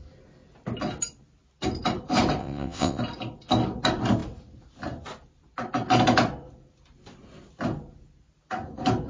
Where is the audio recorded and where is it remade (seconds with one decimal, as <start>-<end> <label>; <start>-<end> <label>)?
0.0-2.4 recorded; 2.4-3.0 remade; 3.0-9.1 recorded